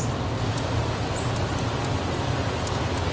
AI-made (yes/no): no